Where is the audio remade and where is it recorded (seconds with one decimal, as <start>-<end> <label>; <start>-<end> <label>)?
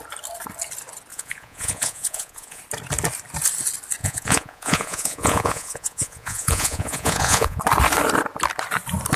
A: 0.0-1.1 recorded; 1.1-2.6 remade; 2.6-4.0 recorded; 4.0-7.6 remade; 7.6-9.2 recorded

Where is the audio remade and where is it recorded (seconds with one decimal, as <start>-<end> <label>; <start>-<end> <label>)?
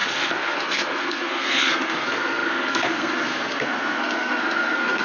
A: 0.0-5.0 remade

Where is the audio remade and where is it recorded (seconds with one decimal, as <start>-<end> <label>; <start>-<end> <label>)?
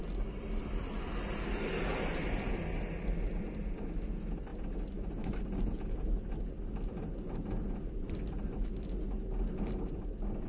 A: 0.0-10.5 recorded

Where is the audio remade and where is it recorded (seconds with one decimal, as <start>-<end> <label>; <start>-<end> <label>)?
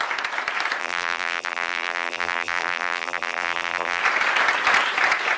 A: 0.0-0.8 recorded; 0.8-4.0 remade; 4.0-5.4 recorded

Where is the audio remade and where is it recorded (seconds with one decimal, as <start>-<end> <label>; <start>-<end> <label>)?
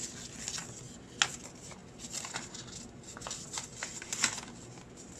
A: 0.0-5.2 recorded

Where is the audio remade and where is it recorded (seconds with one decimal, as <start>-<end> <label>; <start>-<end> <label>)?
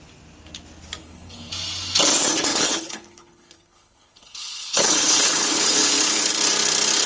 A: 0.0-1.0 recorded; 1.0-1.5 remade; 1.5-2.5 recorded; 2.5-6.3 remade; 6.3-7.1 recorded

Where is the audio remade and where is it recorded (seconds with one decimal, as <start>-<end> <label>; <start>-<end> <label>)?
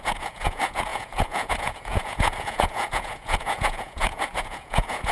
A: 0.0-5.1 remade